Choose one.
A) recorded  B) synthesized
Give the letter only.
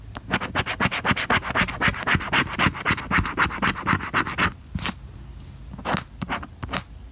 A